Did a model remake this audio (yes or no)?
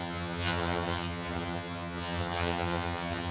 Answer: yes